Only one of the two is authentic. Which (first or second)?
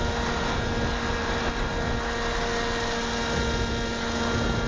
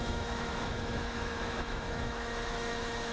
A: first